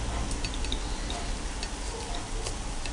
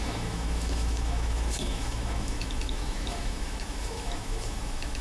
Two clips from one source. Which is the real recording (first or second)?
first